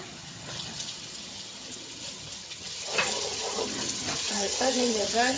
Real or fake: fake